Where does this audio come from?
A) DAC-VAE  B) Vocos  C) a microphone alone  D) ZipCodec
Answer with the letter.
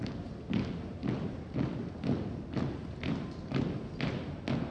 C